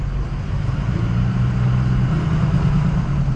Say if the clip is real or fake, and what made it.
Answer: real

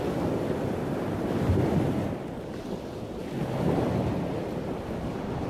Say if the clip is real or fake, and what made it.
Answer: real